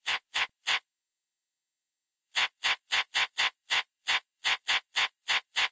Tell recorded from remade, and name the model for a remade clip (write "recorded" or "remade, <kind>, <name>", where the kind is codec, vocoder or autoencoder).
remade, vocoder, WaveNeXt